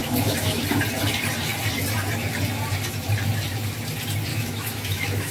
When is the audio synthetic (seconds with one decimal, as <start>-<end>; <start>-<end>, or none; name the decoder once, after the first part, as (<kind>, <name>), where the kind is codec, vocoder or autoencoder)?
0.0-0.6 (autoencoder, DAC-VAE); 4.3-5.3